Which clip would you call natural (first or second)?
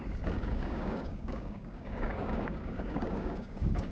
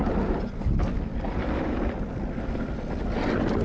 second